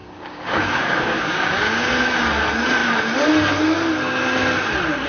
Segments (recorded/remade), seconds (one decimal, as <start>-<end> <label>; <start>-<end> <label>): 0.0-1.9 remade; 1.9-5.1 recorded